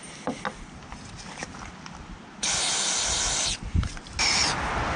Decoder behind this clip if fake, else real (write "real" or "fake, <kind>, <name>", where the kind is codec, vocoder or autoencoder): real